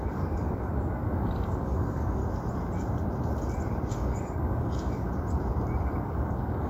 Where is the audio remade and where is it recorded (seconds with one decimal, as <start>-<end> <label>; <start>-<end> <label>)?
0.0-2.2 remade; 2.2-3.9 recorded; 3.9-5.1 remade; 5.1-5.8 recorded; 5.8-6.7 remade